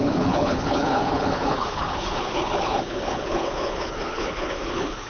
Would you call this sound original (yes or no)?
no